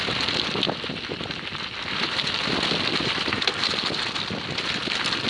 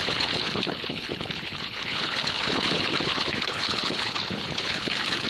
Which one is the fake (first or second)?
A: second